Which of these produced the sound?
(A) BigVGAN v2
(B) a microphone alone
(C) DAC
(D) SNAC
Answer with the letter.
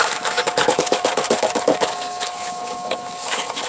C